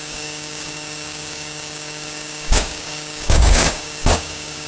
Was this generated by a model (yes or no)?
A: yes